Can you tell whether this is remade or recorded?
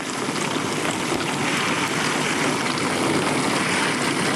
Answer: recorded